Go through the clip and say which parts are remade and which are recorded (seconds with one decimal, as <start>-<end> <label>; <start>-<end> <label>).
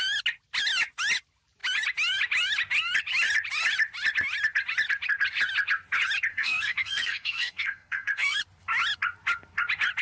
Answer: 0.0-6.3 recorded; 6.3-8.4 remade; 8.4-10.0 recorded